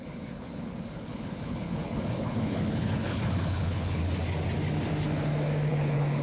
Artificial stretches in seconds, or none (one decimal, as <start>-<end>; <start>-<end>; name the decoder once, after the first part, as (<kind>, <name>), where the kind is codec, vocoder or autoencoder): 0.0-4.0 (codec, HILCodec); 5.7-6.2